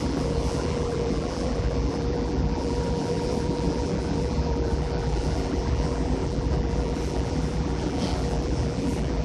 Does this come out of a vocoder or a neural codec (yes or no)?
yes